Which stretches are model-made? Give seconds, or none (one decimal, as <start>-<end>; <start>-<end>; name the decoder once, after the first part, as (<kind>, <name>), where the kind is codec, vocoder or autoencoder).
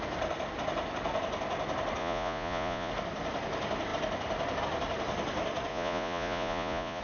2.0-2.9 (vocoder, Vocos); 5.7-7.0